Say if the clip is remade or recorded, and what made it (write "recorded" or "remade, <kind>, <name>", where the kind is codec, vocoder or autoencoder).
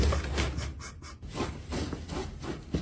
recorded